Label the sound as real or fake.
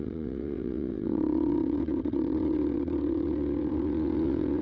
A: fake